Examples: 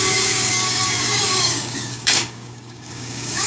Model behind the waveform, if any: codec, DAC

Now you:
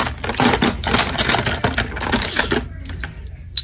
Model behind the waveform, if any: none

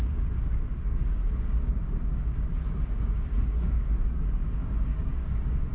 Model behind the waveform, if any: codec, DAC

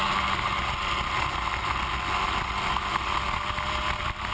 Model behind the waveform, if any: none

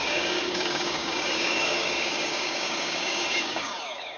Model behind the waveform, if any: codec, DAC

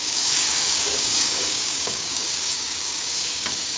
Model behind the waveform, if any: codec, DAC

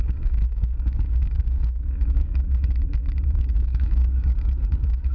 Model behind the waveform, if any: codec, DAC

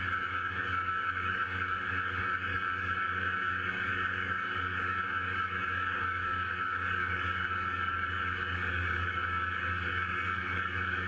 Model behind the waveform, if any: codec, DAC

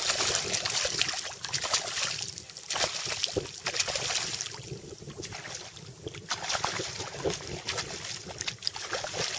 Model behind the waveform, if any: none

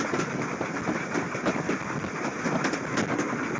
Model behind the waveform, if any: none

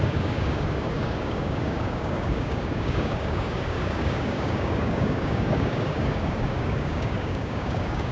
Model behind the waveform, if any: codec, DAC